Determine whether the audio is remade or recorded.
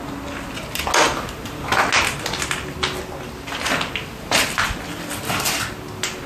recorded